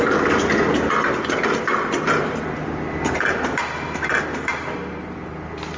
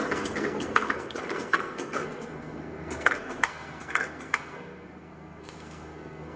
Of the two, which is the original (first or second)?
first